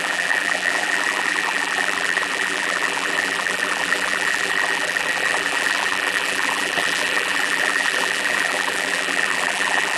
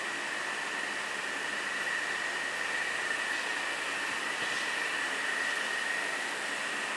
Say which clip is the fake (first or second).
first